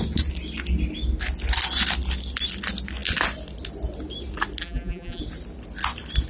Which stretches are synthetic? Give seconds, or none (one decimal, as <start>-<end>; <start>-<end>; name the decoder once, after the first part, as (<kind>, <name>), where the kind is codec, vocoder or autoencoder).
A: 4.6-5.2 (vocoder, BigVGAN v2)

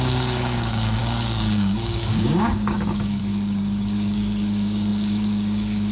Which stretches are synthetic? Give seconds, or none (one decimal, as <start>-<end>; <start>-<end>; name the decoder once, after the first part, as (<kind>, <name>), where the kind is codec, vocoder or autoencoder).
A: 0.0-5.9 (codec, DAC)